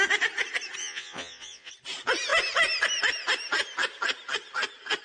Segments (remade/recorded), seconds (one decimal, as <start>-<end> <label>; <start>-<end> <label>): 0.0-0.8 recorded; 0.8-1.7 remade; 1.7-5.0 recorded